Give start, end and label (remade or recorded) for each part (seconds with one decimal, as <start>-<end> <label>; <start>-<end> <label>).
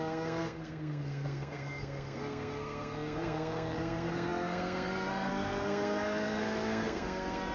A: 0.0-7.5 remade